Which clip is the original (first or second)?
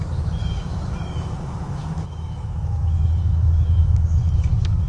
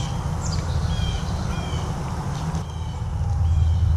second